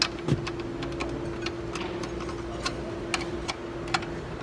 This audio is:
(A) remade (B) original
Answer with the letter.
B